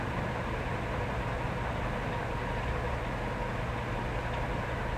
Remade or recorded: recorded